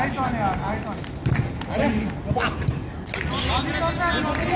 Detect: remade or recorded recorded